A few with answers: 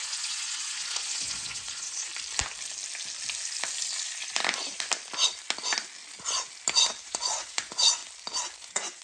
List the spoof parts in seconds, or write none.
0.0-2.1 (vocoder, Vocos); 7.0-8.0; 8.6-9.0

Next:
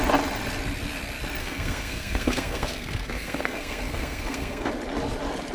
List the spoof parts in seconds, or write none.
1.4-4.7 (codec, SNAC)

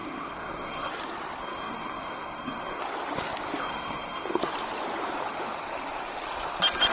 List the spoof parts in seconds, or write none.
0.0-0.9 (codec, SNAC); 1.4-2.8; 3.6-4.4

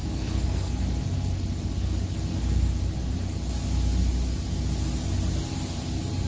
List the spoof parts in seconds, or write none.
0.0-0.8 (codec, SNAC)